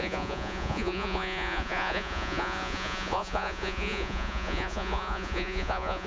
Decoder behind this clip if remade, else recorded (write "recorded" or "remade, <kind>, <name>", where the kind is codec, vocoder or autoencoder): remade, vocoder, Vocos